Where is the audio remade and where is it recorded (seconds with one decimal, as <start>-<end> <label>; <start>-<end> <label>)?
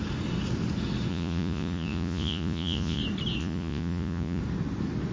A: 0.0-1.1 recorded; 1.1-3.0 remade; 3.0-3.4 recorded; 3.4-4.4 remade; 4.4-5.1 recorded